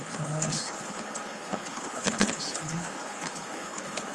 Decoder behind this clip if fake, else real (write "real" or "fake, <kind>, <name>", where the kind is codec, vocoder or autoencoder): fake, codec, HILCodec